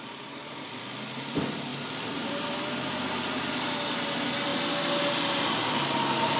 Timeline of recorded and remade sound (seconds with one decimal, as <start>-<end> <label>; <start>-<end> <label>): 0.0-6.4 recorded